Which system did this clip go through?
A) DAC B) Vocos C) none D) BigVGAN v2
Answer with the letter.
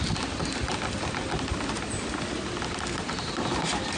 C